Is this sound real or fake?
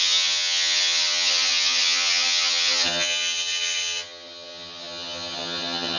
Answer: fake